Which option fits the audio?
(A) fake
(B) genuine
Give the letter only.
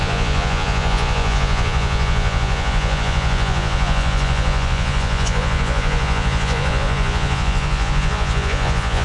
A